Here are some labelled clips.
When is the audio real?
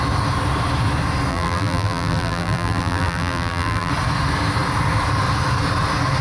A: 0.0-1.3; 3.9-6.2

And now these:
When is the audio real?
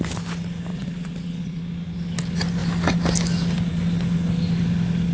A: 0.0-0.7; 1.6-5.1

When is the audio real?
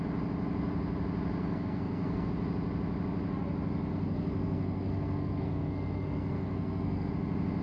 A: 0.0-1.4; 2.3-3.9; 7.1-7.6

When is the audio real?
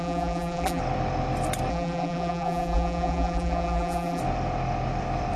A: 0.8-1.7; 4.2-5.4